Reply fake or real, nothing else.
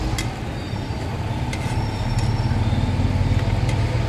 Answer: real